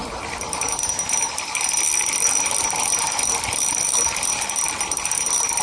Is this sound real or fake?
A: real